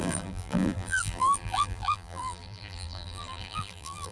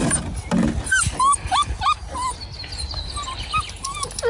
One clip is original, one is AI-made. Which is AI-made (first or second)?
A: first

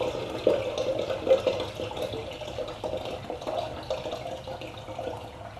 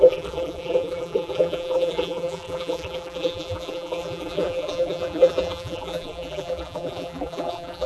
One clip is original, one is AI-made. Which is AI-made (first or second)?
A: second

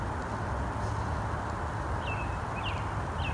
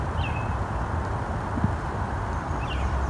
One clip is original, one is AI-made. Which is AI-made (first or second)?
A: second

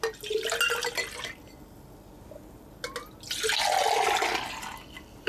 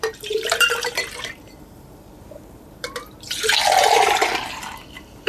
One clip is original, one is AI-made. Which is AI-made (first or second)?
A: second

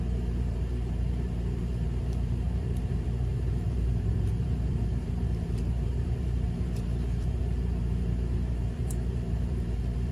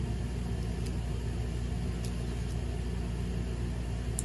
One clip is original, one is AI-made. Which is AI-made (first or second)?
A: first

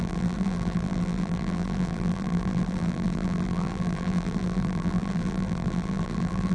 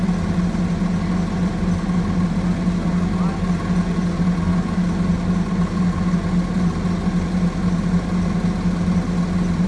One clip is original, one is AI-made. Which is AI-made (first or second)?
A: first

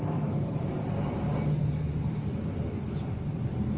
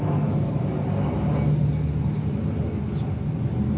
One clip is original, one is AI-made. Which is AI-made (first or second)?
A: first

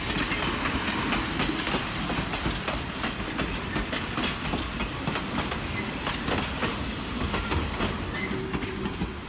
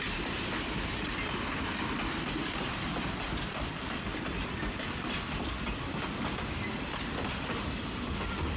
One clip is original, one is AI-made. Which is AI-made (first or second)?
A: second